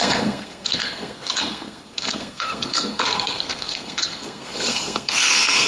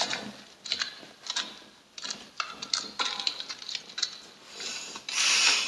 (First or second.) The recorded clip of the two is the second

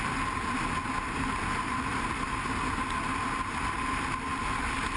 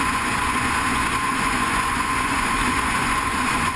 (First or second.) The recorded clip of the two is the first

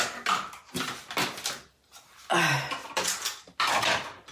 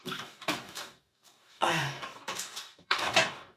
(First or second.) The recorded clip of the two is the first